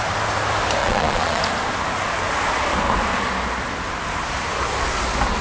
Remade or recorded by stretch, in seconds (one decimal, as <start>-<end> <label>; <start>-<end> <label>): 0.0-0.8 recorded; 0.8-1.4 remade; 1.4-5.4 recorded